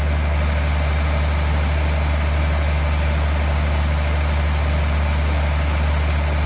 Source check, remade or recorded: recorded